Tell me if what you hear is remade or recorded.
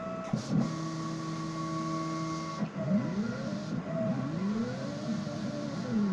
recorded